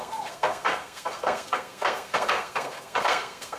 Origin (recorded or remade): remade